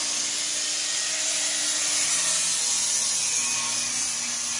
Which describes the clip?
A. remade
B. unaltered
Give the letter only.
B